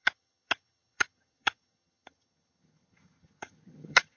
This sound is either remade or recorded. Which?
remade